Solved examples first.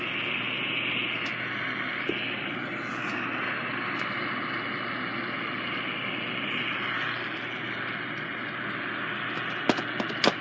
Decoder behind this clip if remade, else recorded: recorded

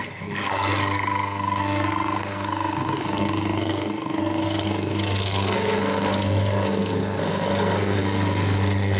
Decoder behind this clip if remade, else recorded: remade, codec, SNAC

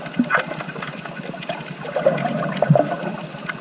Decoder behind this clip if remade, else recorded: recorded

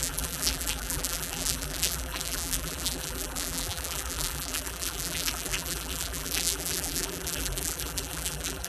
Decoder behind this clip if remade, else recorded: remade, vocoder, BigVGAN v2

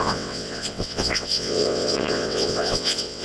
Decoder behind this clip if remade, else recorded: remade, vocoder, WaveNeXt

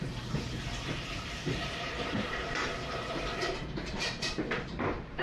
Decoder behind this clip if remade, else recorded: remade, vocoder, BigVGAN v2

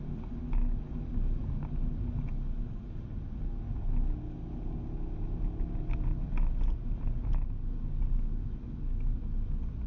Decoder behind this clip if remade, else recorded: recorded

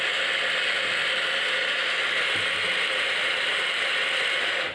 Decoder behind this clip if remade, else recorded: recorded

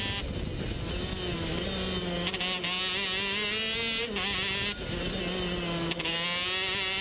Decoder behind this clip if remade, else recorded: recorded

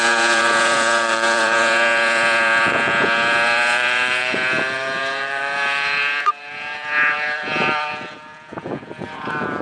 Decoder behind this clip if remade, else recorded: remade, vocoder, Vocos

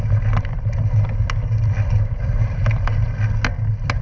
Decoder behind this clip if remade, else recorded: recorded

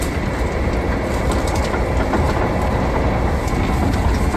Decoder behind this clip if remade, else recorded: recorded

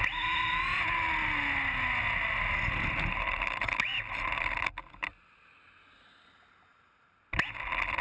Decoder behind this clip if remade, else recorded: recorded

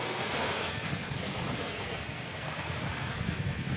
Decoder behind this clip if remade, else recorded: remade, codec, SNAC